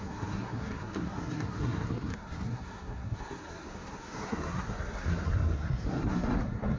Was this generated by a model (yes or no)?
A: yes